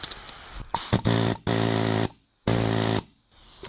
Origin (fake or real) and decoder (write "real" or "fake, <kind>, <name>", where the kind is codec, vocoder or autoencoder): real